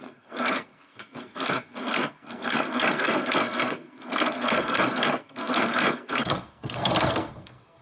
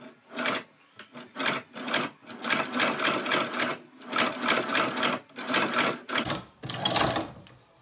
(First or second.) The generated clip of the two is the first